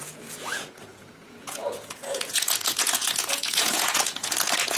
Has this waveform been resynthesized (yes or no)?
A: yes